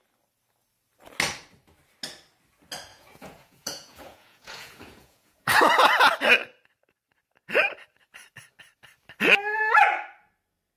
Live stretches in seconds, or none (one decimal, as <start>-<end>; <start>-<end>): 0.0-2.9; 5.6-10.8